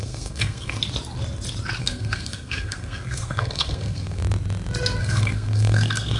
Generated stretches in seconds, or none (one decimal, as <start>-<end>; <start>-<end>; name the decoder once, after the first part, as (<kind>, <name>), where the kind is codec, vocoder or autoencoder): 0.0-0.8 (codec, SNAC); 1.8-4.2; 5.0-6.2